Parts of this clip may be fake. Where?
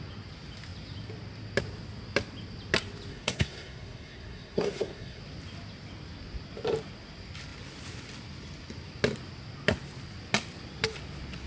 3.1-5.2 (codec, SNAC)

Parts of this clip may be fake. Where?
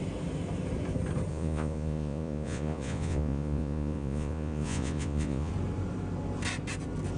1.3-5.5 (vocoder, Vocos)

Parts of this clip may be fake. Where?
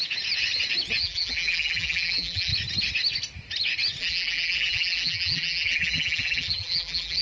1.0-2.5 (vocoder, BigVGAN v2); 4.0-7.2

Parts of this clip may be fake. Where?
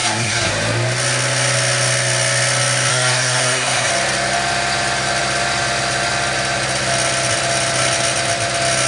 0.0-0.5 (codec, SNAC); 2.9-3.9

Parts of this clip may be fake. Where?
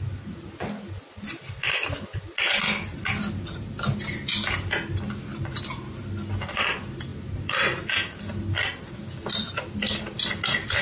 none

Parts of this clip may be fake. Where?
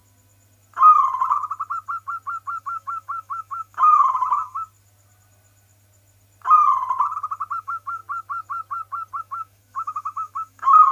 2.6-4.6 (autoencoder, DAC-VAE); 7.6-8.0; 9.2-10.9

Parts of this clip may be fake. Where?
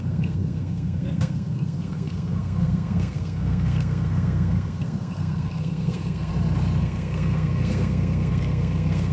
0.0-6.3 (codec, SNAC); 6.8-9.1